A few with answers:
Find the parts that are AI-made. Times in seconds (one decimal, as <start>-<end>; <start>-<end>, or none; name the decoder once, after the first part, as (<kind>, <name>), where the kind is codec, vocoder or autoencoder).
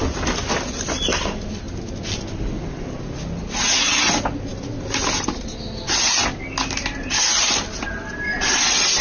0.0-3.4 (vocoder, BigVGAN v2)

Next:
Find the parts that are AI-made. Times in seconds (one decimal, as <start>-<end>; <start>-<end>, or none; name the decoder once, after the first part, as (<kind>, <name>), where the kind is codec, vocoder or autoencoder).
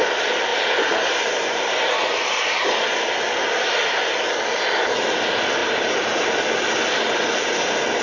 0.5-3.0 (vocoder, BigVGAN v2); 5.6-6.3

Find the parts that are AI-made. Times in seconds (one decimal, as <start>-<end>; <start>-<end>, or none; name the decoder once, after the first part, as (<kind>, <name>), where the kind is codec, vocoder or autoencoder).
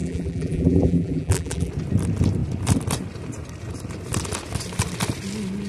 0.0-1.7 (vocoder, BigVGAN v2)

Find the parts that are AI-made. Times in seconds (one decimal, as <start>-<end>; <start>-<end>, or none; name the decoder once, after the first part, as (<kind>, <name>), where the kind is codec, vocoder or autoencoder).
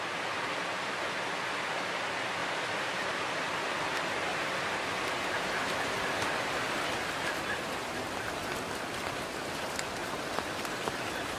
2.4-3.4 (vocoder, BigVGAN v2); 10.0-11.4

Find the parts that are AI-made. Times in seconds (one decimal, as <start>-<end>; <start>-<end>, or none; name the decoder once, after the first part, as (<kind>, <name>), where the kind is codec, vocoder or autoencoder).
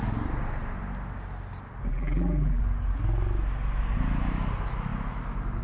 1.9-2.6 (vocoder, BigVGAN v2)